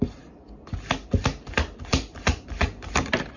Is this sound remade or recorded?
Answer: recorded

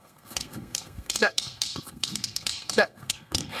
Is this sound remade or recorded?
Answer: remade